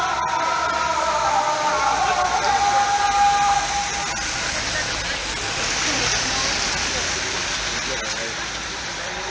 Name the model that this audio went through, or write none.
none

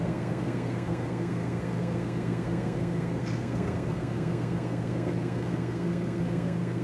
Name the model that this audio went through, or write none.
codec, SNAC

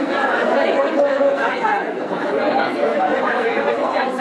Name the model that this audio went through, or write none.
codec, SNAC